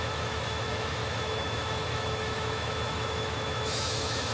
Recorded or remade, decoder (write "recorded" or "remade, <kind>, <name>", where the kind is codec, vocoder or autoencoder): remade, autoencoder, DAC-VAE